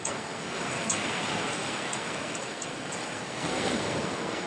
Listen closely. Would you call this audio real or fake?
fake